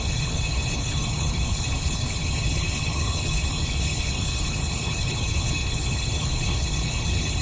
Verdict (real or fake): fake